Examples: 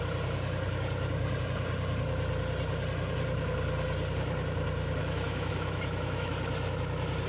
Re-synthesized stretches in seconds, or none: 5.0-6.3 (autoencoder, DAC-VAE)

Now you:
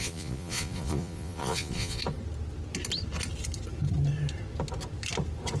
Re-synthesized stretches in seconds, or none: 0.0-2.0 (vocoder, Vocos)

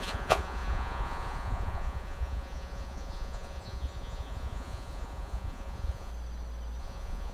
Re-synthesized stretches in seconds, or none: 0.0-6.1 (vocoder, Vocos); 6.8-7.3

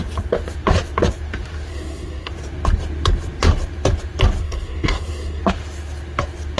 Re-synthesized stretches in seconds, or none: 1.7-2.3 (codec, SNAC); 4.4-5.4

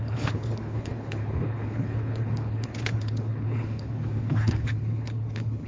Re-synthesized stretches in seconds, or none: 0.0-5.7 (codec, HILCodec)

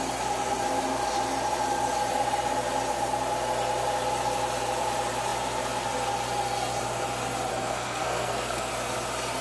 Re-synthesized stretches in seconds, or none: 7.5-8.7 (codec, SNAC)